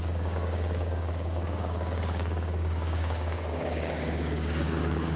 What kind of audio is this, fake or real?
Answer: fake